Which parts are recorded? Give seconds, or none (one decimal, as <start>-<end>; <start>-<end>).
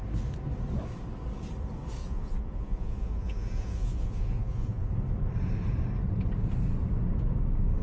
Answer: 0.0-2.0; 4.9-7.8